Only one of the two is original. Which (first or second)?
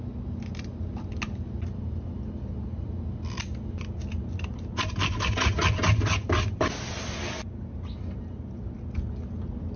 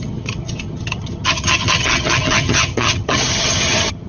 first